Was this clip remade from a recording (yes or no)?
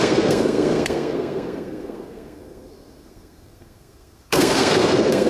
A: yes